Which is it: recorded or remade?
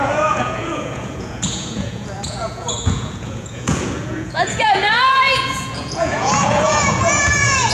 remade